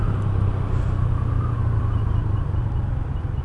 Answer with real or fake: real